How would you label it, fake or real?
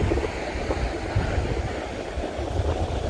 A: real